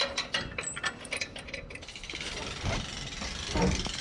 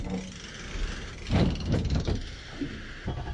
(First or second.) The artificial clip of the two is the first